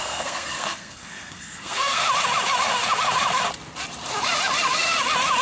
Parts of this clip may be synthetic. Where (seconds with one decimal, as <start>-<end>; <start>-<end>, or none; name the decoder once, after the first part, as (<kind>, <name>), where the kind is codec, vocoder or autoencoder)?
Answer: 0.0-2.0 (codec, SNAC)